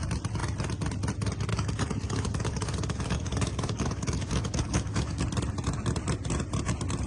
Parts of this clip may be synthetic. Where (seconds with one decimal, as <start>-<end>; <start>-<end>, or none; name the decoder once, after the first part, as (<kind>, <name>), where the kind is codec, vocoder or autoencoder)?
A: 1.5-5.2 (codec, DAC)